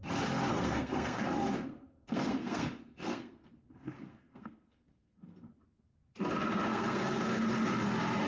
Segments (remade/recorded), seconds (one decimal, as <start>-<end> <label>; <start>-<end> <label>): 0.0-0.5 recorded; 0.5-5.5 remade; 5.5-6.7 recorded; 6.7-7.4 remade; 7.4-8.3 recorded